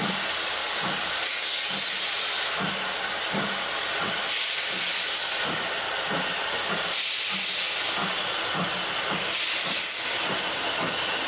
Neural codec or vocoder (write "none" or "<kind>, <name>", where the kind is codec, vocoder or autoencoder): none